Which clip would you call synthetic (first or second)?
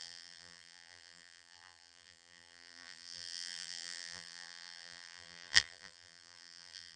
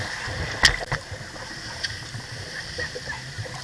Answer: first